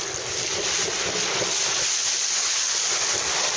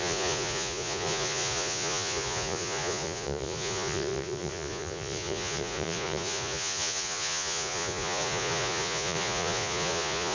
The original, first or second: first